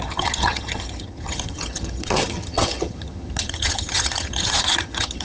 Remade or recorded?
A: remade